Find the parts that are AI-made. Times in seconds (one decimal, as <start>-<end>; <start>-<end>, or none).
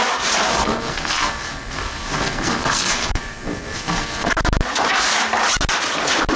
0.5-4.3